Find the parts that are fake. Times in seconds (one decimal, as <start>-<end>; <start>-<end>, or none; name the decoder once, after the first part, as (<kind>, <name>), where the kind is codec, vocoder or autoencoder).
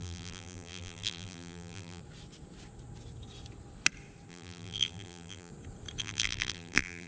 0.0-2.0 (vocoder, BigVGAN v2); 4.3-5.5; 6.0-7.1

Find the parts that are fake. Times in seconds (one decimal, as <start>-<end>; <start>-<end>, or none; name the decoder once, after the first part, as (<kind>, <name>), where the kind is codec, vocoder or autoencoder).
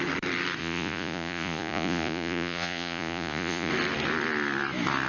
0.6-3.7 (vocoder, Vocos)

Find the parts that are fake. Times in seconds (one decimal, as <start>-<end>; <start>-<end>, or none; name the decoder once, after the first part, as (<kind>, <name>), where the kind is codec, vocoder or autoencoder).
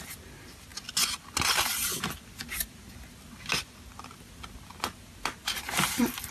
none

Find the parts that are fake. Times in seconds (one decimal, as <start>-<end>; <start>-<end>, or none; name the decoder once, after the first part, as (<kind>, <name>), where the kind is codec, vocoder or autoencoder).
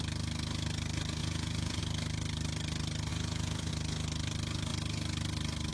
1.2-1.8 (vocoder, Vocos); 3.1-3.7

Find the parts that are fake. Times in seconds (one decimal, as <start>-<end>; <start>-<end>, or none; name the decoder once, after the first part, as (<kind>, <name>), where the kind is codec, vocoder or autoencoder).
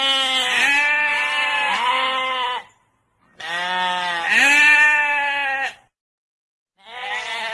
none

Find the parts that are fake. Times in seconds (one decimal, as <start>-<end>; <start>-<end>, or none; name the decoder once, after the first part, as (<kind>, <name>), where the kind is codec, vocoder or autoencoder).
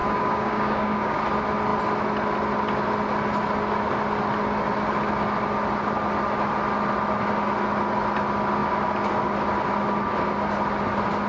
0.0-1.2 (codec, DAC)